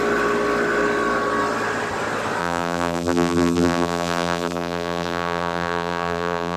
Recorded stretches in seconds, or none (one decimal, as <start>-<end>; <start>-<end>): 0.0-2.4